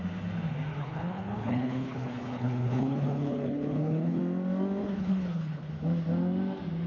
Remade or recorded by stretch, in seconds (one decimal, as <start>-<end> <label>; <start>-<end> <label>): 0.0-0.7 recorded; 0.7-4.2 remade; 4.2-4.8 recorded; 4.8-5.7 remade; 5.7-6.9 recorded